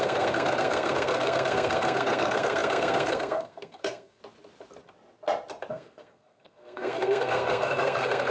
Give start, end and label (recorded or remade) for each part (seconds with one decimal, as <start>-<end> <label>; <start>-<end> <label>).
0.0-4.2 remade; 4.2-5.7 recorded; 5.7-8.3 remade